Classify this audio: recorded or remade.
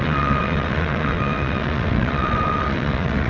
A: remade